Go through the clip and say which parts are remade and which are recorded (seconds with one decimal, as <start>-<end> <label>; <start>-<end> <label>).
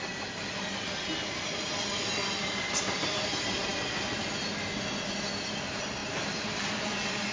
0.0-6.0 recorded; 6.0-7.3 remade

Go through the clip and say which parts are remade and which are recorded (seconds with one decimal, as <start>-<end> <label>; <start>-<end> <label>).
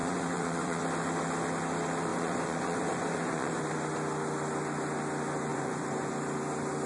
0.0-0.8 remade; 0.8-2.1 recorded; 2.1-3.6 remade; 3.6-5.5 recorded; 5.5-6.1 remade; 6.1-6.9 recorded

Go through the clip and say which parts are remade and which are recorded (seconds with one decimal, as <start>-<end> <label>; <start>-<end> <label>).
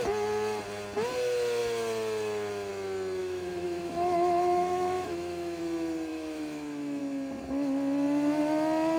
0.0-3.2 recorded; 3.2-5.6 remade; 5.6-6.1 recorded; 6.1-7.0 remade; 7.0-9.0 recorded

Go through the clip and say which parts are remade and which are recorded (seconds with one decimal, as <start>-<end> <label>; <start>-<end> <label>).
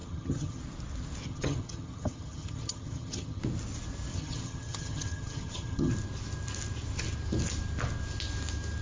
0.0-0.6 remade; 0.6-1.2 recorded; 1.2-3.4 remade; 3.4-4.1 recorded; 4.1-5.9 remade; 5.9-8.8 recorded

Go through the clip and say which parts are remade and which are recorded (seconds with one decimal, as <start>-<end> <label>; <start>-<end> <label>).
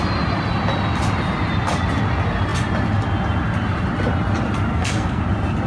0.0-4.7 recorded; 4.7-5.2 remade; 5.2-5.7 recorded